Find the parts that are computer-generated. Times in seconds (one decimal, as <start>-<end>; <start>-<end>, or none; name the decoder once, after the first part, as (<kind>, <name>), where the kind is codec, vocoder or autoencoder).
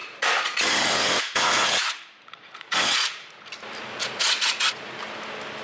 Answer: 0.0-3.4 (vocoder, Vocos); 4.0-5.0